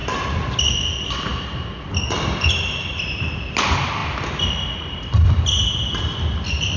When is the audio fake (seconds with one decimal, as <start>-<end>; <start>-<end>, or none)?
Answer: none